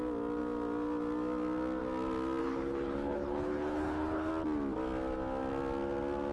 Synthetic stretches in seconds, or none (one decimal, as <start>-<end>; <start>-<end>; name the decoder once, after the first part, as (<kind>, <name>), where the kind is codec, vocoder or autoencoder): 2.4-4.3 (codec, HILCodec)